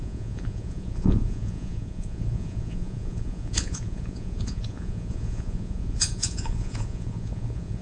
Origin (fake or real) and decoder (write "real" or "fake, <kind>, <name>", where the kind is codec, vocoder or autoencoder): fake, vocoder, Vocos